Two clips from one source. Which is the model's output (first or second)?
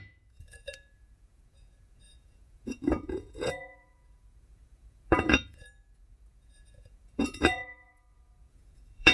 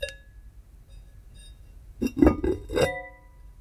first